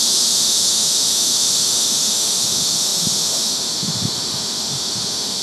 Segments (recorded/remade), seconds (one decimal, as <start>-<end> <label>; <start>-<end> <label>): 0.0-5.4 remade